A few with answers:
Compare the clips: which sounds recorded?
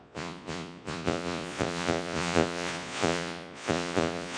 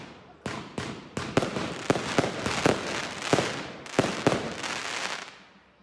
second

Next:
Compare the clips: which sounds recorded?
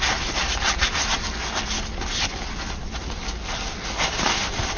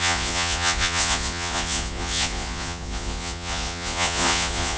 first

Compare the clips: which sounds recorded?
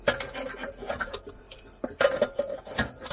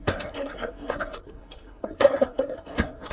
first